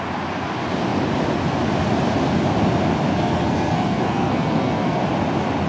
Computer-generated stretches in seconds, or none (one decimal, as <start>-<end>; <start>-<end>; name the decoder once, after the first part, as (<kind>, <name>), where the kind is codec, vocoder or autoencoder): 3.1-5.0 (codec, SNAC)